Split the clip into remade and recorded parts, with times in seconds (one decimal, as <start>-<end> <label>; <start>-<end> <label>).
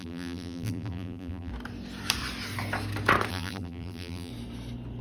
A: 0.0-1.5 remade; 1.5-3.3 recorded; 3.3-4.3 remade; 4.3-5.0 recorded